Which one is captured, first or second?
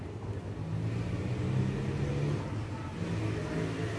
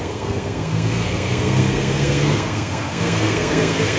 first